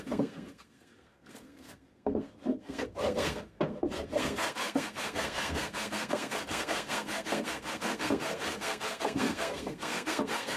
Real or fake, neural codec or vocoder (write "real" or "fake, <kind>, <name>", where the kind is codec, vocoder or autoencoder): fake, codec, SNAC